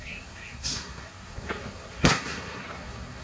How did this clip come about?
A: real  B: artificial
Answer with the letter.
B